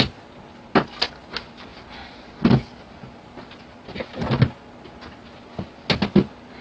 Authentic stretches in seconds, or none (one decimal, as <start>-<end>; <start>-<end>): 0.0-6.6